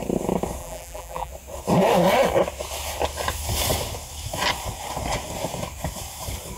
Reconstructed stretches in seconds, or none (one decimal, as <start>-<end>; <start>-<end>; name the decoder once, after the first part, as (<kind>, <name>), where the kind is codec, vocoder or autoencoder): 0.6-1.3 (vocoder, BigVGAN v2)